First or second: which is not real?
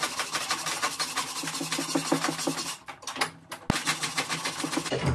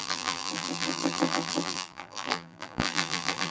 second